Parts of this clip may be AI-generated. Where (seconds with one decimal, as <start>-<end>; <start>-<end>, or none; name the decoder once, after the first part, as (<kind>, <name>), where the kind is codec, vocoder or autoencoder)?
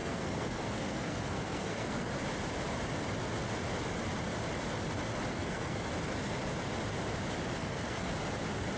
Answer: 0.0-2.1 (codec, SNAC); 5.3-5.9; 7.6-8.1